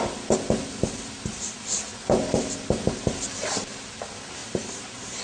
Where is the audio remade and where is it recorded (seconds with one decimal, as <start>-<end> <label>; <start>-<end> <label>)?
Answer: 0.0-4.4 recorded; 4.4-5.2 remade